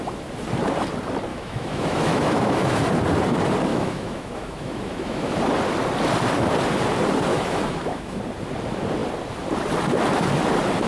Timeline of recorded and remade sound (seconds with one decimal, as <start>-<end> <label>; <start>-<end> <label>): 0.0-1.3 recorded; 1.3-2.8 remade; 2.8-3.7 recorded; 3.7-5.3 remade; 5.3-7.3 recorded; 7.3-8.2 remade; 8.2-10.9 recorded